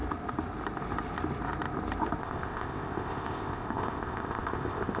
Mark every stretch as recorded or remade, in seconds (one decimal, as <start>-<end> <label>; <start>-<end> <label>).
0.0-2.2 recorded; 2.2-5.0 remade